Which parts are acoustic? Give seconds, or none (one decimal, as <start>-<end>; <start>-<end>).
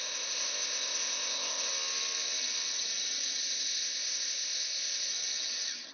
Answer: 1.7-3.4; 5.1-5.9